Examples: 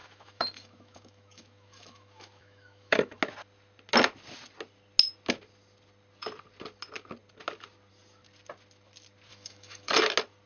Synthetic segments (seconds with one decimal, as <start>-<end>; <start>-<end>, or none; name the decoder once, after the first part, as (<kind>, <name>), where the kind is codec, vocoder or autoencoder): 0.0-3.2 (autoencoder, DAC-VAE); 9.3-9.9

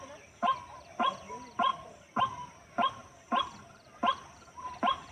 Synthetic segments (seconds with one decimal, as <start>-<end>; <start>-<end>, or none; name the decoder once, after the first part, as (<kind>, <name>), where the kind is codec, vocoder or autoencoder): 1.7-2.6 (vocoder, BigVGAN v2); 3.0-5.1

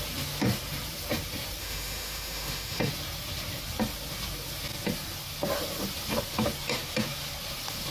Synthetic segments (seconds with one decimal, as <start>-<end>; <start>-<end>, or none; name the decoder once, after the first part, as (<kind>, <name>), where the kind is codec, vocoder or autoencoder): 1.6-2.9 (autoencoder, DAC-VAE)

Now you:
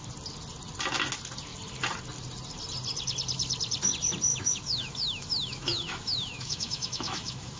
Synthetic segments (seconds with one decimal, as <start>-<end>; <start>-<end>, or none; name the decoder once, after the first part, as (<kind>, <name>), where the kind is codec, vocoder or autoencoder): 4.3-7.6 (autoencoder, DAC-VAE)

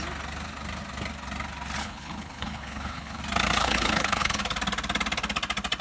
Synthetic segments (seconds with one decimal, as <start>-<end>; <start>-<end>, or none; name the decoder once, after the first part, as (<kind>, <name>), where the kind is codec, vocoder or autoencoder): 1.8-3.2 (codec, HILCodec); 3.6-4.4

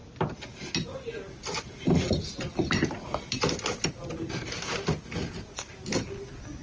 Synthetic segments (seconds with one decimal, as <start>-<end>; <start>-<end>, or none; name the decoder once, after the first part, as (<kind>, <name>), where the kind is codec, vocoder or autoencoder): none

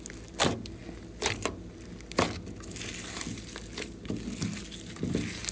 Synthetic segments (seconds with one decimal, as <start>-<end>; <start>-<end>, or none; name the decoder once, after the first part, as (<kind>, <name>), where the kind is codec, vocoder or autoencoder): none